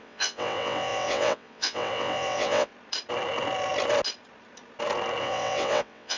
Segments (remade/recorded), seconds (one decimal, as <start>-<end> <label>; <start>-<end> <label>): 0.0-2.7 remade; 2.7-5.2 recorded; 5.2-6.2 remade